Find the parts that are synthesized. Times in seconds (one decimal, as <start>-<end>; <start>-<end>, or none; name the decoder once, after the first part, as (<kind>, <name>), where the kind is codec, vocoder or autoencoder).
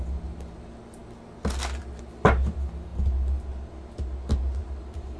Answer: none